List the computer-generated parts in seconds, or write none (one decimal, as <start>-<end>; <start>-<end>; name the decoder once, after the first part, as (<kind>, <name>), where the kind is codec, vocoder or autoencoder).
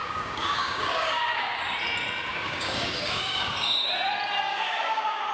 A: 0.0-1.6 (codec, DAC); 2.3-3.9; 4.5-5.3